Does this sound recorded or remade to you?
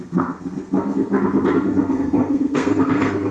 remade